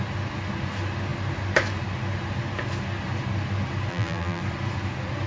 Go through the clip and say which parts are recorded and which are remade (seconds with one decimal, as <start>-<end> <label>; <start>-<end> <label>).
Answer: 0.0-3.9 recorded; 3.9-4.4 remade; 4.4-5.3 recorded

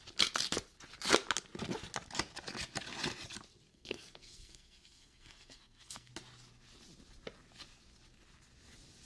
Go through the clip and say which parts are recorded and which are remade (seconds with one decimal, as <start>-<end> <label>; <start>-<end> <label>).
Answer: 0.0-3.7 recorded; 3.7-6.1 remade; 6.1-9.1 recorded

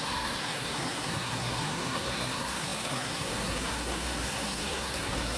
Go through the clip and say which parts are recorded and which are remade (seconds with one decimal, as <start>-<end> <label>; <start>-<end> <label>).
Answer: 0.0-5.4 remade